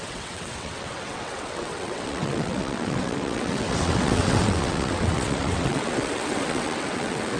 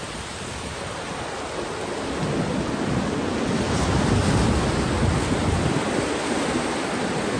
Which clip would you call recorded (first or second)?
second